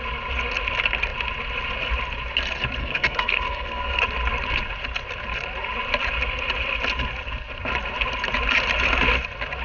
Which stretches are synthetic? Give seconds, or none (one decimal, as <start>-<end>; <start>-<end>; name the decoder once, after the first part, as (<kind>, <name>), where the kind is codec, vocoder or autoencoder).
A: 2.8-4.0 (codec, SNAC)